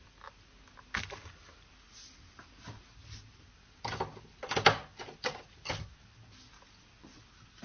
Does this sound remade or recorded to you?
recorded